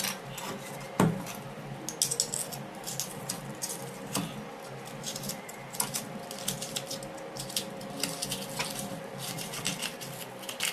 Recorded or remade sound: recorded